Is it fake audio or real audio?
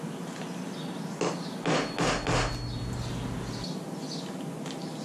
real